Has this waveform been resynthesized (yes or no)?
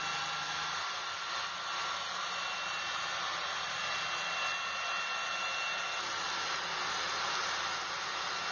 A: no